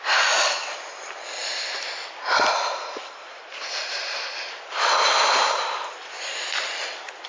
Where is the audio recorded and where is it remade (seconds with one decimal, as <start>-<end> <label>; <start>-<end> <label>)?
0.0-7.3 recorded